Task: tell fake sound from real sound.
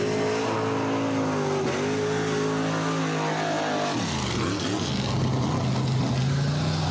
real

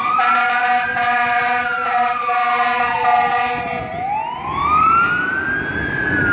real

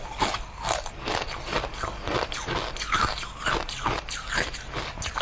real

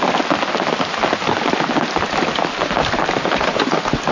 real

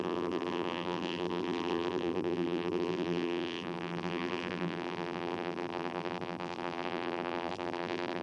fake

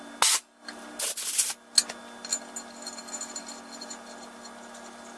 real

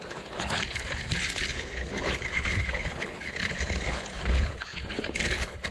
fake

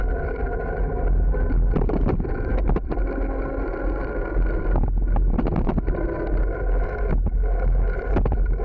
real